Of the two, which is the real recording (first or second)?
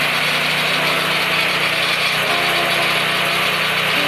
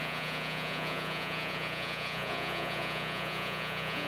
first